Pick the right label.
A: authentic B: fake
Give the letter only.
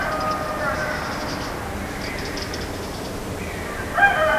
A